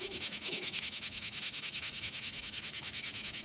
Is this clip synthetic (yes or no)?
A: yes